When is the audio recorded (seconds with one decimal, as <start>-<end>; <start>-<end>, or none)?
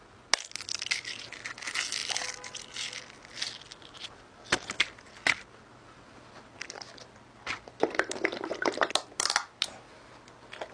0.0-10.7